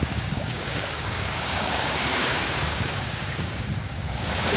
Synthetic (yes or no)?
yes